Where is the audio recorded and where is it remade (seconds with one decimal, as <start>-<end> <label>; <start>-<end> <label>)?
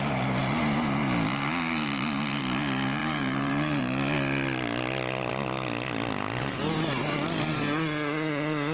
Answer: 0.0-3.0 recorded; 3.0-3.8 remade; 3.8-8.7 recorded